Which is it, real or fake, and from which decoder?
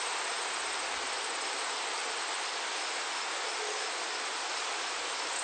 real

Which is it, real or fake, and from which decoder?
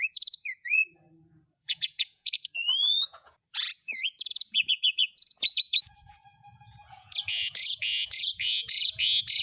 fake, vocoder, Vocos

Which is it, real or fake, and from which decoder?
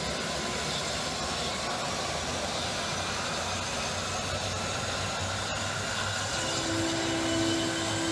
real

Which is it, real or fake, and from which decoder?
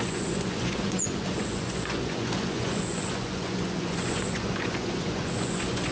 fake, vocoder, Vocos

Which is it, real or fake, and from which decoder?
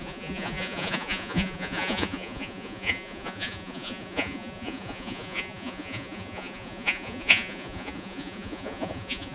fake, vocoder, Vocos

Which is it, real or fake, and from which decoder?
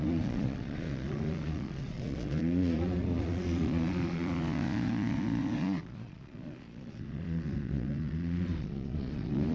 fake, vocoder, Vocos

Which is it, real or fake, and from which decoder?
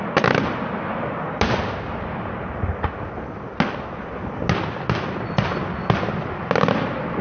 real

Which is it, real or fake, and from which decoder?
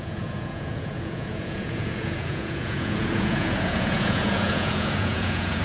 fake, vocoder, Vocos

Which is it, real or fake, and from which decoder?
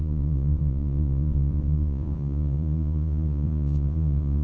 fake, vocoder, Vocos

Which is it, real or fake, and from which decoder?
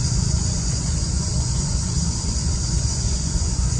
fake, vocoder, Vocos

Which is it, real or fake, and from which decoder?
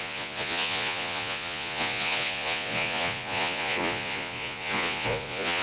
fake, vocoder, Vocos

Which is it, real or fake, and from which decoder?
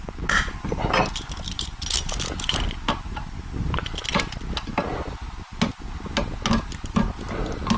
real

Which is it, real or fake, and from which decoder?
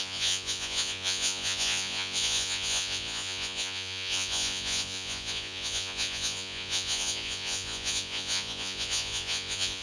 fake, vocoder, Vocos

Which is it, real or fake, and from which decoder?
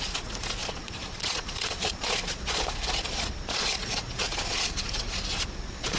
fake, vocoder, Vocos